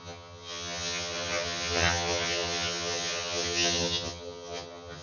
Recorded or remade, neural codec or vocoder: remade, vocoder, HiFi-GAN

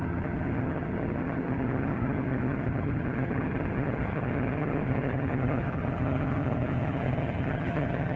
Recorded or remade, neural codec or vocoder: remade, vocoder, HiFi-GAN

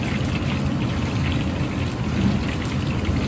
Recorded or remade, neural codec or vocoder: recorded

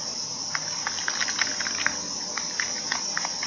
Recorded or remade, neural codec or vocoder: recorded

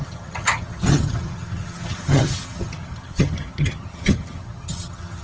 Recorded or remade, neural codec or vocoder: remade, vocoder, HiFi-GAN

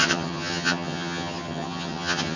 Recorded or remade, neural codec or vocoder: remade, vocoder, HiFi-GAN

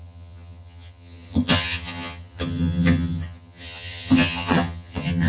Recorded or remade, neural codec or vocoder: remade, vocoder, HiFi-GAN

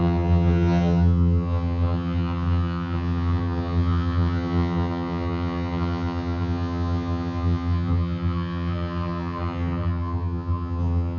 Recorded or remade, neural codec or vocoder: remade, vocoder, HiFi-GAN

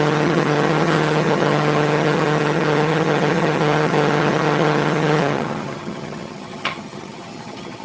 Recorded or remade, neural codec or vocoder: remade, vocoder, HiFi-GAN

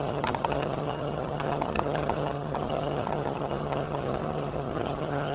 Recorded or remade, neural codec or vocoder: remade, vocoder, HiFi-GAN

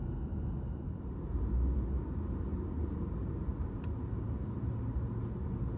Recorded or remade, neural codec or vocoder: recorded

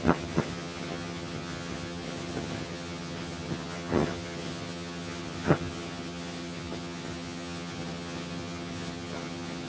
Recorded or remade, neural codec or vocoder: remade, vocoder, HiFi-GAN